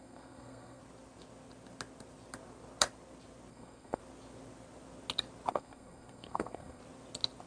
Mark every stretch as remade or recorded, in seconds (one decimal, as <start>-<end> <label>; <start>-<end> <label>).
0.0-0.8 remade; 0.8-3.5 recorded; 3.5-4.0 remade; 4.0-5.5 recorded; 5.5-6.8 remade; 6.8-7.5 recorded